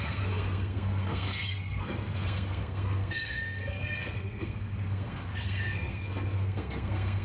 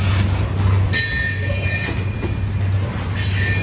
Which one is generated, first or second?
first